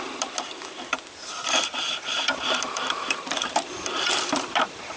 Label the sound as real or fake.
fake